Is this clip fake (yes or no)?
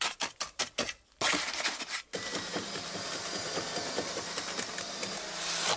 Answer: no